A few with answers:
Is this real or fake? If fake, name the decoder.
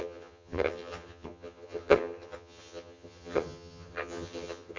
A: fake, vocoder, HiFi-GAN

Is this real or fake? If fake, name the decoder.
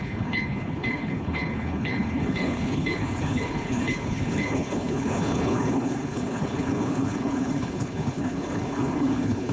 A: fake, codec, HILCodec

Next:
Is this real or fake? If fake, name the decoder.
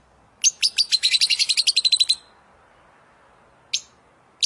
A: real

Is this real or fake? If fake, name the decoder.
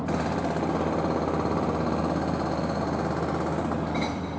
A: real